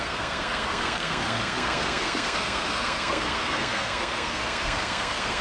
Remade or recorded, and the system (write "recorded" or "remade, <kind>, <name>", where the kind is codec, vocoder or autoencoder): remade, codec, SNAC